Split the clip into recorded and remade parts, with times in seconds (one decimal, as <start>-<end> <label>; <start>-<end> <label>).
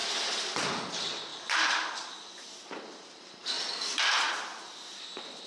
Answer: 0.0-5.5 recorded